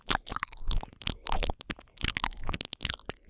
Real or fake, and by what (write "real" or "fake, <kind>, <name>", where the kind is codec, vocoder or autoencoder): real